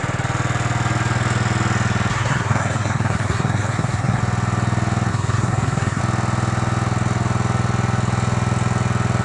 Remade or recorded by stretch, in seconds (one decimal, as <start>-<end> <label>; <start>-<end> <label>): 0.0-2.1 recorded; 2.1-4.2 remade; 4.2-5.1 recorded; 5.1-6.0 remade; 6.0-9.2 recorded